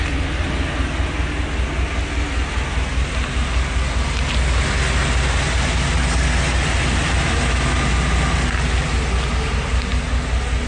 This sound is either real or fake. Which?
real